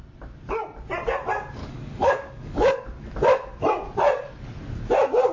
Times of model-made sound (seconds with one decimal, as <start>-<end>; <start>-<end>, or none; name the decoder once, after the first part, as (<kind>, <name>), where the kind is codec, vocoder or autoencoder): 1.6-2.7 (codec, DAC)